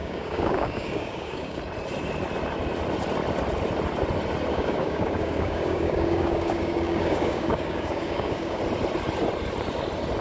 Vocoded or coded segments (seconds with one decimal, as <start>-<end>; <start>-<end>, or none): 0.0-1.6; 4.5-8.6